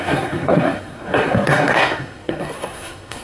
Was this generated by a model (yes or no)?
yes